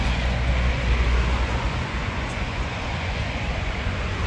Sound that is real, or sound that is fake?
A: fake